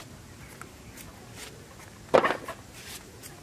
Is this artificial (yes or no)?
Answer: no